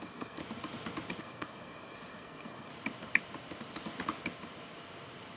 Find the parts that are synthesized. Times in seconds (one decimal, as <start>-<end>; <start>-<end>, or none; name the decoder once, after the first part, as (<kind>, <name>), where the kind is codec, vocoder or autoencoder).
0.0-0.4 (codec, SNAC); 1.2-2.7